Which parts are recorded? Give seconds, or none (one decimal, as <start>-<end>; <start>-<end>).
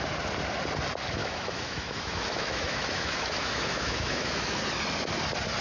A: 0.0-1.2; 4.6-5.6